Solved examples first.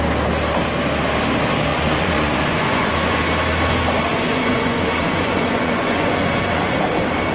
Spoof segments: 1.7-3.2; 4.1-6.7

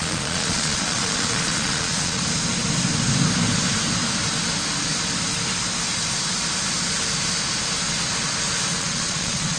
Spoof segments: 0.0-2.2; 8.7-9.6

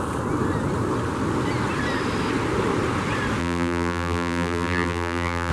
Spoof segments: 3.4-5.5

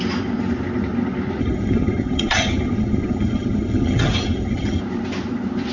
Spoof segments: 1.4-4.8

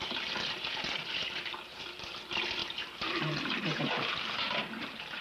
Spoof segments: 0.0-5.2

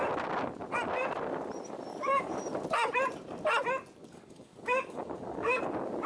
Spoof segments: 1.9-2.4; 4.0-5.6